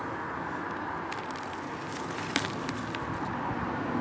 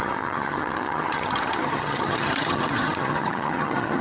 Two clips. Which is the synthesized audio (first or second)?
second